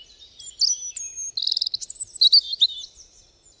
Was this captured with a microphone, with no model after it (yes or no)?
yes